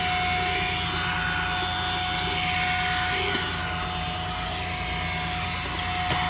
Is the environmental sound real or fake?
real